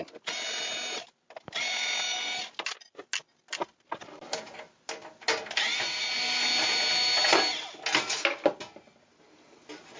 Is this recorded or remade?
recorded